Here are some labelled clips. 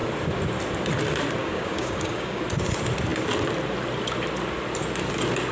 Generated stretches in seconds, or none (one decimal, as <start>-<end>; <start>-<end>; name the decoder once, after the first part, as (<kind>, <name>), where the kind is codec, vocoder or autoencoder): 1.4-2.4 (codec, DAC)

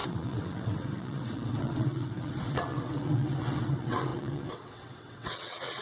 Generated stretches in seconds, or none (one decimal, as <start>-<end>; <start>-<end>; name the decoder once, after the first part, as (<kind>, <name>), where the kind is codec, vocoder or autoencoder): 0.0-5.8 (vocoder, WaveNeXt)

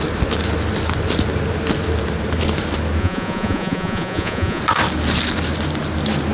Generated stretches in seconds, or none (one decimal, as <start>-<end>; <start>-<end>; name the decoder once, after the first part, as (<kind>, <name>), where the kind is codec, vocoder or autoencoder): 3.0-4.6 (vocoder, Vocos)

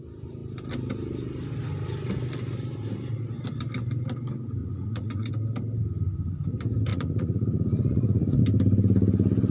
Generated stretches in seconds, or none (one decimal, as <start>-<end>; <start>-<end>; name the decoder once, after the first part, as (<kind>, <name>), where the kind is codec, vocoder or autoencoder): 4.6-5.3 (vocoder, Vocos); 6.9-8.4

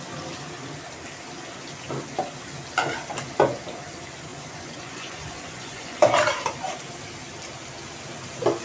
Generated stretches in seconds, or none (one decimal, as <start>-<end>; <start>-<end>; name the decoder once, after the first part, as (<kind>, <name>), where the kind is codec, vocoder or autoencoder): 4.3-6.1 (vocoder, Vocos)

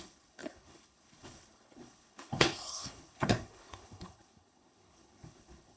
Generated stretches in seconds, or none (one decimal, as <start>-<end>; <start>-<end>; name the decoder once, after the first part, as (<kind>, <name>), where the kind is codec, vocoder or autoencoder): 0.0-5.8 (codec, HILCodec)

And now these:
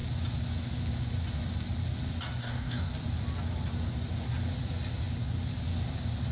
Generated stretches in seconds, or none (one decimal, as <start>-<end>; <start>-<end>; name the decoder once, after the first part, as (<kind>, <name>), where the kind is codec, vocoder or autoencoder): 2.4-2.9 (codec, DAC)

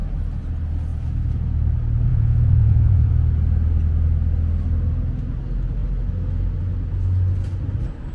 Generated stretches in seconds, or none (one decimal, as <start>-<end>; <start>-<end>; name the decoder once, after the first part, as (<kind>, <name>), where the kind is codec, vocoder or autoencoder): 2.1-3.1 (vocoder, Vocos)